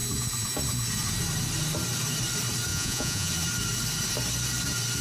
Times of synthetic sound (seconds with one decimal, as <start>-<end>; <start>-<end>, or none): 2.7-3.3